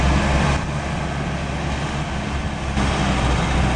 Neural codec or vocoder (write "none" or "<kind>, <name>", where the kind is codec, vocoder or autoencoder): none